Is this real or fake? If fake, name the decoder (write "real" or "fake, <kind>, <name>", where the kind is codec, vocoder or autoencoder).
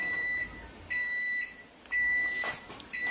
fake, vocoder, BigVGAN v2